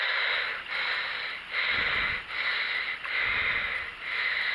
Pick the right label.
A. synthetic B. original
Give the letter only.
B